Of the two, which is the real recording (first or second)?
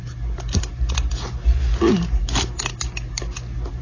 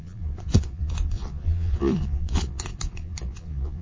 first